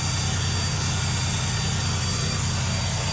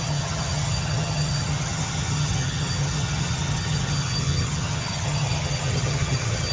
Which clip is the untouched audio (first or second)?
first